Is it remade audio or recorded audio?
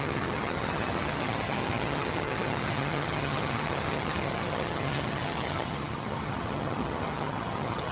remade